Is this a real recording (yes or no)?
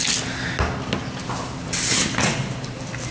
yes